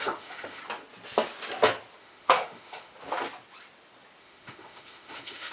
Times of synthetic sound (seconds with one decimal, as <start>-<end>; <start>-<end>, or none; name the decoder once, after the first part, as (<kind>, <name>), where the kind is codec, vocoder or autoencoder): 0.0-0.6 (autoencoder, DAC-VAE); 2.0-2.9; 4.2-5.5